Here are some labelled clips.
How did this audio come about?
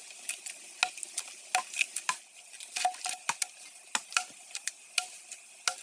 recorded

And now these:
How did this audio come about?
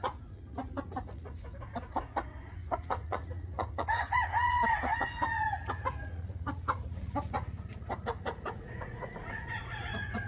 remade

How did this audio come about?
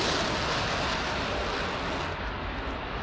recorded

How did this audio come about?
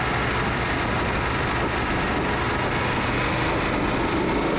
recorded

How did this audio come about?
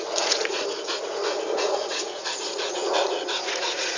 remade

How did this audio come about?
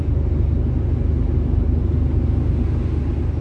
recorded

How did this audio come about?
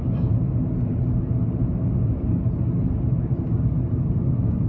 recorded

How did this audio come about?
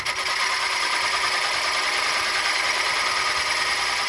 recorded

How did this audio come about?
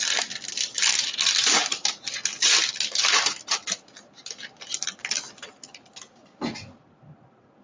recorded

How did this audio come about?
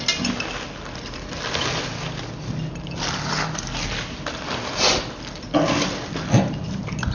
recorded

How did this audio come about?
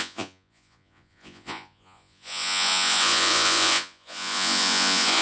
remade